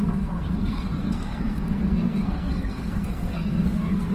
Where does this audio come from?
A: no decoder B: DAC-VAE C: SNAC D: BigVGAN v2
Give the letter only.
C